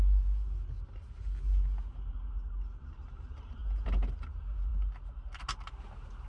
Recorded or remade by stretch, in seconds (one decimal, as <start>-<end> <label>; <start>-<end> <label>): 0.0-6.3 recorded